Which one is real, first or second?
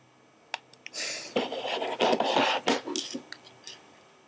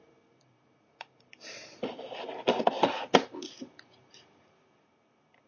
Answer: first